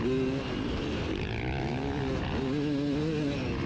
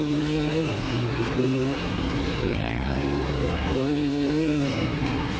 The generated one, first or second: second